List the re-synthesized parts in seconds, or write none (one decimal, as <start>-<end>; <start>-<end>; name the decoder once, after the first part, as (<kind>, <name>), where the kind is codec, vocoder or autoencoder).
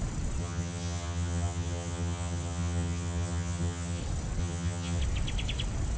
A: 0.4-4.0 (vocoder, HiFi-GAN); 4.4-5.0